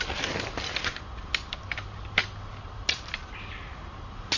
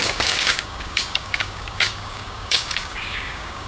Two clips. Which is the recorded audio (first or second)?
first